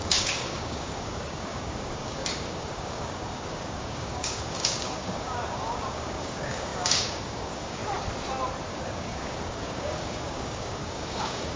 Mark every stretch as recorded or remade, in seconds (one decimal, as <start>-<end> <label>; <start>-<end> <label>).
0.0-7.8 remade; 7.8-8.7 recorded; 8.7-11.6 remade